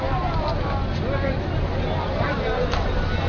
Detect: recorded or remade recorded